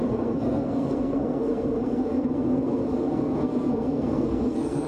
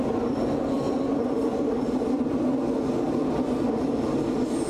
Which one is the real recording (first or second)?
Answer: second